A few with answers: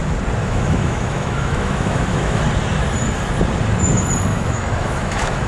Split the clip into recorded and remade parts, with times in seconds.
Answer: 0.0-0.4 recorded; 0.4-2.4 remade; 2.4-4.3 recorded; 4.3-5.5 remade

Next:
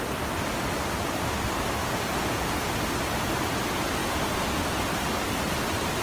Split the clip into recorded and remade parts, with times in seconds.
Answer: 0.0-1.8 recorded; 1.8-2.6 remade; 2.6-6.0 recorded

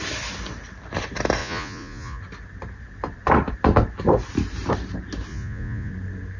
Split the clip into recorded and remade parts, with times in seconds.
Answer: 0.0-1.4 recorded; 1.4-2.2 remade; 2.2-5.3 recorded; 5.3-5.9 remade; 5.9-6.4 recorded

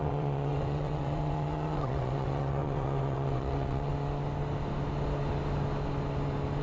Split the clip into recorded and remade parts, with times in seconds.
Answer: 0.0-3.9 remade; 3.9-6.6 recorded